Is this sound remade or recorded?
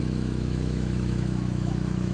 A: remade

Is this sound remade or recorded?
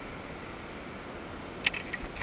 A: recorded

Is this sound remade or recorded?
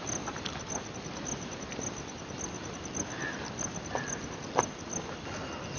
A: recorded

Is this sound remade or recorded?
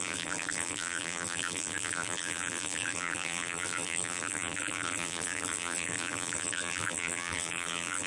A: remade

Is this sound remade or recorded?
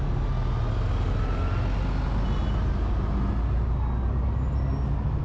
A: recorded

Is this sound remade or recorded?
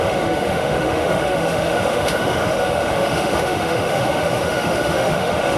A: remade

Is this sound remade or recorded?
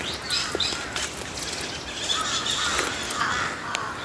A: recorded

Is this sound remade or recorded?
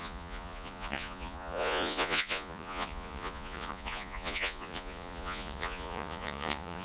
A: remade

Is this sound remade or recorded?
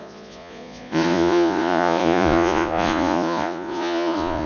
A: remade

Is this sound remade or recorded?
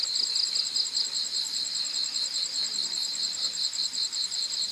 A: recorded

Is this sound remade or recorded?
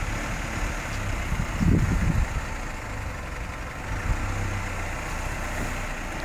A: recorded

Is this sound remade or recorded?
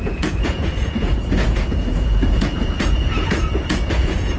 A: remade